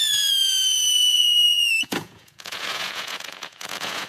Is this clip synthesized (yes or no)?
yes